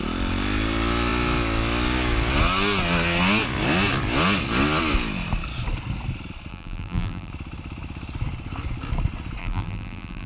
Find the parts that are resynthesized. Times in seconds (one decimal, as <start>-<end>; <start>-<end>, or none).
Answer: 6.5-7.3; 9.4-10.3